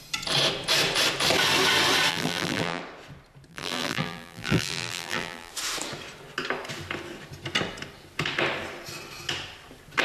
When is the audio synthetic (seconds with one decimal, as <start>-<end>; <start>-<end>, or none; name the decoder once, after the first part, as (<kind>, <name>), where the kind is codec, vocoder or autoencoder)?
2.1-2.8 (vocoder, BigVGAN v2); 3.5-5.5

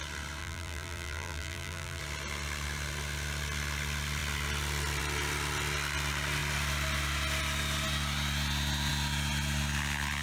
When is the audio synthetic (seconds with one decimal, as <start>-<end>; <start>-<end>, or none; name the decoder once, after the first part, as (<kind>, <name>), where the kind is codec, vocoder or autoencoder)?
0.4-2.0 (vocoder, BigVGAN v2)